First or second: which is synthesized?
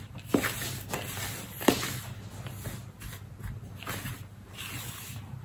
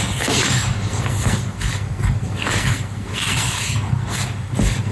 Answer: second